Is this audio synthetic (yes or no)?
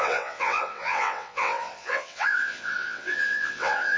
yes